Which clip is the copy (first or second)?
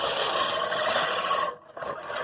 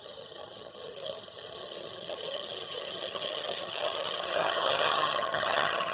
second